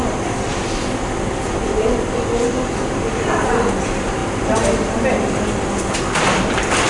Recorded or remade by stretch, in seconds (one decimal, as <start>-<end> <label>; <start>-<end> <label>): 0.0-6.9 recorded